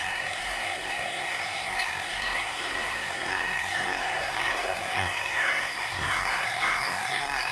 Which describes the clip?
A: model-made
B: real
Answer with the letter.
A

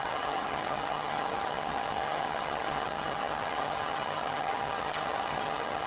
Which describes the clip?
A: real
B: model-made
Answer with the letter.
B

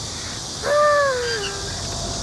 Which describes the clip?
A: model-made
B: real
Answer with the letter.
B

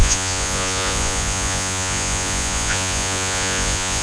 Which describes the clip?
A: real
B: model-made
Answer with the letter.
B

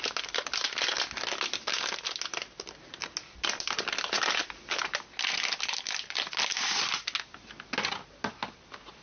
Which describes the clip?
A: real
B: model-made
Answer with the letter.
A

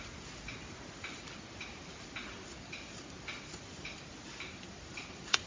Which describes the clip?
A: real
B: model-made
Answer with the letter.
A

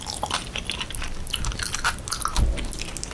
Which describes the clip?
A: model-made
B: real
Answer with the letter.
B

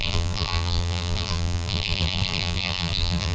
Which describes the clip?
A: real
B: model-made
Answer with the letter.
B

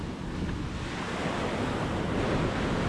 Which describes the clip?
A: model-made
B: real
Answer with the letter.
A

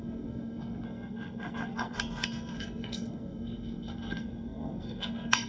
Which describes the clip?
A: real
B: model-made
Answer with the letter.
B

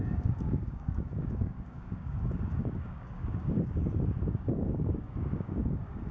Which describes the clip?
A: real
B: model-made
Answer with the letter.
B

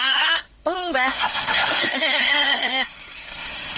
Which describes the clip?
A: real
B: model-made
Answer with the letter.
B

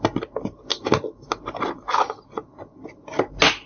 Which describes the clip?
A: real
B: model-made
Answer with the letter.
A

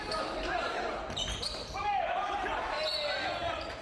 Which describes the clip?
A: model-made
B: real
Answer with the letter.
A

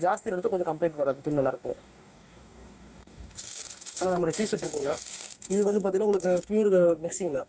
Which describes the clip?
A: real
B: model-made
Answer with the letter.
B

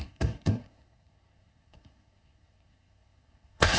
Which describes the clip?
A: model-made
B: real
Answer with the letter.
A